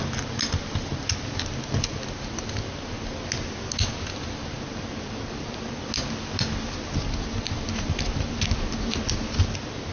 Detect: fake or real real